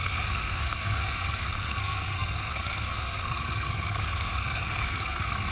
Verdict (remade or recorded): remade